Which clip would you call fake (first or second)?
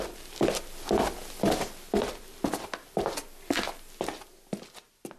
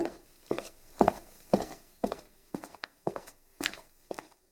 second